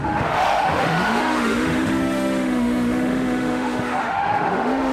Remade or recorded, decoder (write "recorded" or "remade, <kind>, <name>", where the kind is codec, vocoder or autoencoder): remade, autoencoder, DAC-VAE